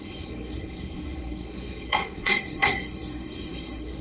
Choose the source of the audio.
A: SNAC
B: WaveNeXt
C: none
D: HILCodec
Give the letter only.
A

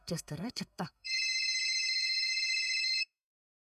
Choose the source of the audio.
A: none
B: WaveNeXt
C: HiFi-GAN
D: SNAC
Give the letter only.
D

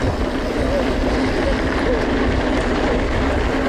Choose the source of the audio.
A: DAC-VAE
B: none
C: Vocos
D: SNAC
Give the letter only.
B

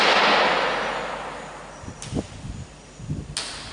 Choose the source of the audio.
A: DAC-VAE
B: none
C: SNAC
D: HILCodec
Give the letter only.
B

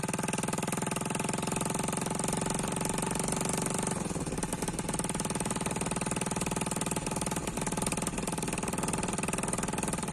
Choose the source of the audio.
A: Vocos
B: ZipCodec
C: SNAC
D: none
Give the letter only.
D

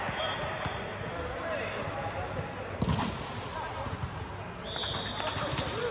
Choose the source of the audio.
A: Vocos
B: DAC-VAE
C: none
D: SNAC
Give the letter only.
C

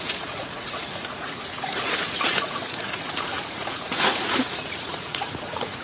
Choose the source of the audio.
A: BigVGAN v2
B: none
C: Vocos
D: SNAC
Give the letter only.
C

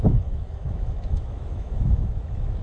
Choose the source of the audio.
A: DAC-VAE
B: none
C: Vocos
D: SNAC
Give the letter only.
A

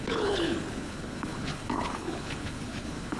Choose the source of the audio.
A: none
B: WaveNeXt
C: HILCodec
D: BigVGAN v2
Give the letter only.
C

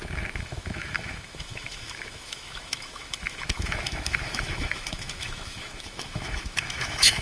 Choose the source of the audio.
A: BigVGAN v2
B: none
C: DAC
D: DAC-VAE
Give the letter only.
D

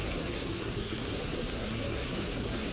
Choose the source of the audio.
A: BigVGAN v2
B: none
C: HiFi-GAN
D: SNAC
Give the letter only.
D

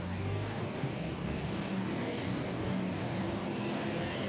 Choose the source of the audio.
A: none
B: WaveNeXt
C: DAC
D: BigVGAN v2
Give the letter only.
C